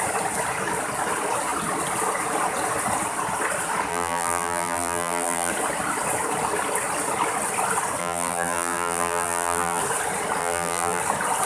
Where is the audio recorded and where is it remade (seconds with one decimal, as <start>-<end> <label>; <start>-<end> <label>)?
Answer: 0.0-3.9 recorded; 3.9-5.5 remade; 5.5-8.0 recorded; 8.0-9.8 remade; 9.8-10.4 recorded; 10.4-11.0 remade; 11.0-11.5 recorded